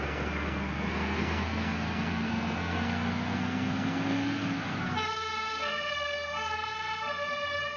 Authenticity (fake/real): fake